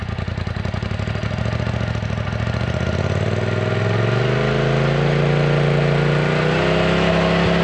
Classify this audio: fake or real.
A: real